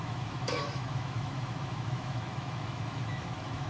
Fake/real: fake